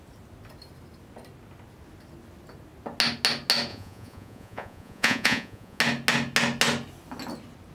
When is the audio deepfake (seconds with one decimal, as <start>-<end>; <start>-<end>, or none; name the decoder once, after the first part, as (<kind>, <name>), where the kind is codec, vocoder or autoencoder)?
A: 3.7-5.8 (vocoder, Vocos)